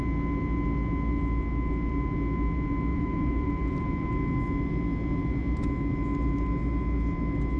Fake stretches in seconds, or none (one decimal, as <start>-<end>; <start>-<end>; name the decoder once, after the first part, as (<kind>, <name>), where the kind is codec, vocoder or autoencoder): 2.9-4.1 (vocoder, BigVGAN v2)